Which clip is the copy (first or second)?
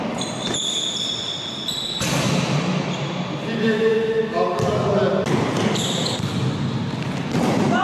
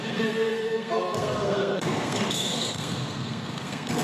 second